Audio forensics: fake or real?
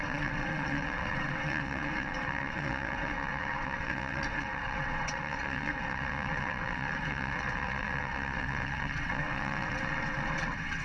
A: fake